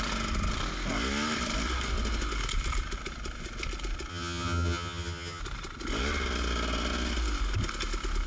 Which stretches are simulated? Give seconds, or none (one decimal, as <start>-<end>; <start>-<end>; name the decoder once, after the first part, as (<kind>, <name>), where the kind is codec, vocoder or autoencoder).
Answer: 4.1-5.4 (vocoder, HiFi-GAN)